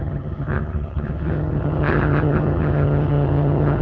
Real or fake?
fake